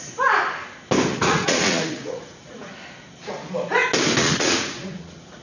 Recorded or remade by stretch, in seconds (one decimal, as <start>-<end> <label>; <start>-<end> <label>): 0.0-1.1 recorded; 1.1-2.7 remade; 2.7-4.2 recorded; 4.2-5.4 remade